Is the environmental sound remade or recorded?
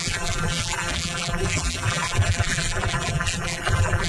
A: remade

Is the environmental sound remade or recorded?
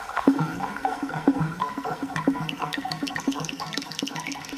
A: remade